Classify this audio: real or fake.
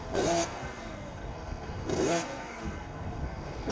fake